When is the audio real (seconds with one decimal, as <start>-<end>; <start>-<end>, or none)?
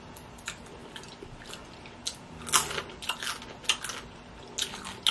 0.0-5.1